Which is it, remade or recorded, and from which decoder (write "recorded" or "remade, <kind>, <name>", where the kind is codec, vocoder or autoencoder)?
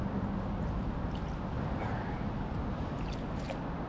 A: recorded